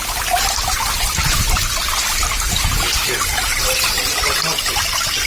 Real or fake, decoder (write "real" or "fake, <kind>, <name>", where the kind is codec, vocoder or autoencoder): real